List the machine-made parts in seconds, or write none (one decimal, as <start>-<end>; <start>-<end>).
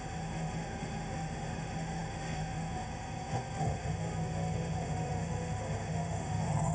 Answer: 0.0-6.7